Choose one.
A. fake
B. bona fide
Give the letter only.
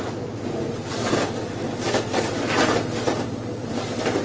B